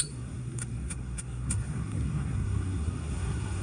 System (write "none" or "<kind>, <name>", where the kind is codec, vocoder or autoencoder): codec, SNAC